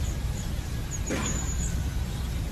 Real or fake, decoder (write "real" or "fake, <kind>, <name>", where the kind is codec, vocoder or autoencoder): real